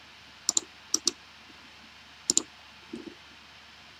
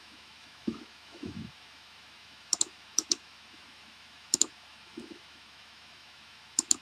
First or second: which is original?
first